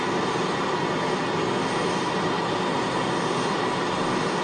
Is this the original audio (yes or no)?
yes